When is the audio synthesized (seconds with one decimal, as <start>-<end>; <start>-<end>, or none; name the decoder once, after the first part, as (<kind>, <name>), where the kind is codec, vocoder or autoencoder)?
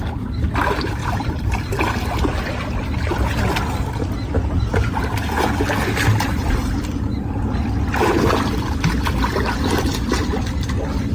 1.0-1.8 (vocoder, BigVGAN v2)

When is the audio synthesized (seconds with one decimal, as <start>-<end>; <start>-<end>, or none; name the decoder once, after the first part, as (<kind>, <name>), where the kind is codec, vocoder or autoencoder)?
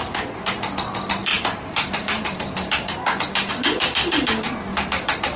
1.3-3.5 (vocoder, BigVGAN v2); 4.7-5.4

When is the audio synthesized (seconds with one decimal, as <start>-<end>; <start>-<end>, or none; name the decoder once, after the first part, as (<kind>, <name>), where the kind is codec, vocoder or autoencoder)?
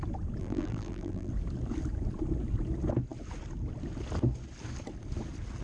0.4-1.3 (vocoder, BigVGAN v2)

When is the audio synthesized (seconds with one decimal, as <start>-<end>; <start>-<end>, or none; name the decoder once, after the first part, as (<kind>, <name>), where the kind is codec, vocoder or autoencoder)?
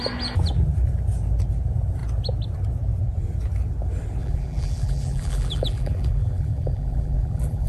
4.2-7.7 (vocoder, BigVGAN v2)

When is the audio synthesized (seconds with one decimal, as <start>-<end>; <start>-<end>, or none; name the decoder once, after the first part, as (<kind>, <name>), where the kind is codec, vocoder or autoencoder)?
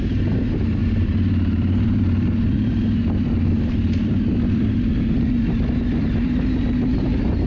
0.0-7.5 (vocoder, BigVGAN v2)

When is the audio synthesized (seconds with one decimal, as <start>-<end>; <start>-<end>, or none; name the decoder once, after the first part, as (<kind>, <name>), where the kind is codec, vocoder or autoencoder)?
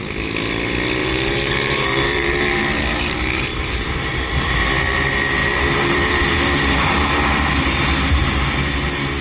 1.0-4.6 (vocoder, BigVGAN v2); 5.4-7.6